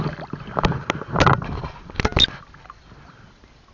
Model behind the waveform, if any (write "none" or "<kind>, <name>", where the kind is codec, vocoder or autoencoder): none